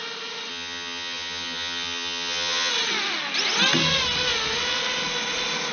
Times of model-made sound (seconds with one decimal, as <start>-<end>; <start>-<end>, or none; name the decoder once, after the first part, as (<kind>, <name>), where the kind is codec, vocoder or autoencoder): 0.5-2.7 (vocoder, HiFi-GAN)